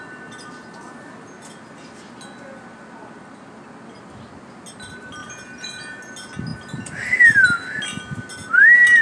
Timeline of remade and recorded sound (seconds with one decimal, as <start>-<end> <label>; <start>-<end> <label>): 0.0-5.2 recorded; 5.2-6.0 remade; 6.0-9.0 recorded